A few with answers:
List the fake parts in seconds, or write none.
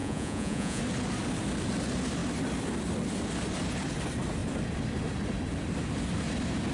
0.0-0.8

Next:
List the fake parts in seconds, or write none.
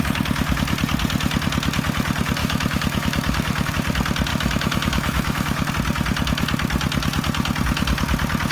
2.4-3.7; 4.3-5.7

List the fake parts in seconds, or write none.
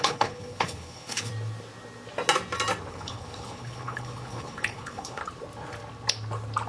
0.0-1.3; 2.9-5.2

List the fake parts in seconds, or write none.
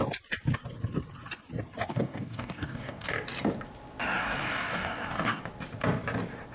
1.9-3.1; 4.2-5.4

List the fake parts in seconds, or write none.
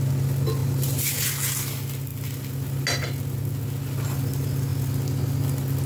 none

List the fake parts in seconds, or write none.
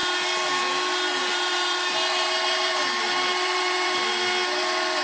1.2-4.2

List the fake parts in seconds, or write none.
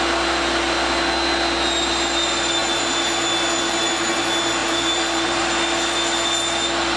4.6-5.4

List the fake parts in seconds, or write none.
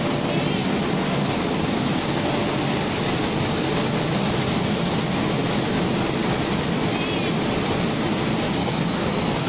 8.6-9.5